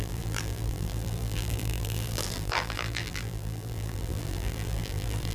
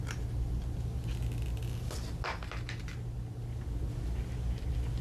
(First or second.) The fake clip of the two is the first